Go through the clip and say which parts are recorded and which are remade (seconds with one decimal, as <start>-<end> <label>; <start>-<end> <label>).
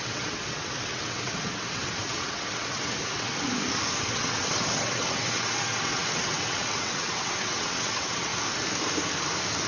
0.0-3.3 remade; 3.3-4.0 recorded; 4.0-8.3 remade; 8.3-9.7 recorded